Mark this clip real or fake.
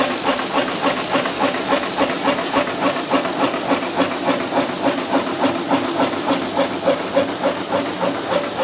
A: real